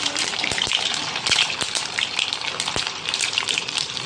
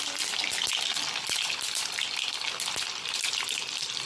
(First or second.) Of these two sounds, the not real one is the first